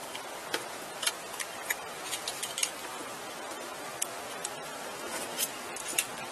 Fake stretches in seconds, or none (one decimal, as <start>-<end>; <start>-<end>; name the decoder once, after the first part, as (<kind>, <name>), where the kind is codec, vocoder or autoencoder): none